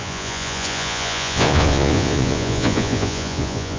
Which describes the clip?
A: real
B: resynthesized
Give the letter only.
B